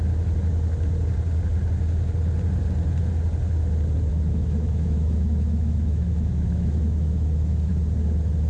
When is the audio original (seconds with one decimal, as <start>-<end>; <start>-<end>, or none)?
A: 0.0-4.1; 7.7-8.5